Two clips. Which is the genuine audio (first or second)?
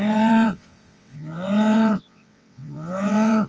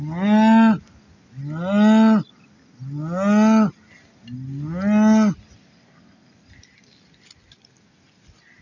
second